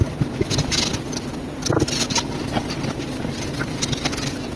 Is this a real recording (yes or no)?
yes